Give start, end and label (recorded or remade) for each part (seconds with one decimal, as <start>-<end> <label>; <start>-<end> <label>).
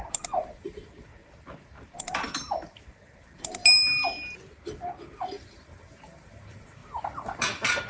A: 0.0-1.1 remade; 1.1-2.0 recorded; 2.0-3.6 remade; 3.6-4.6 recorded; 4.6-7.9 remade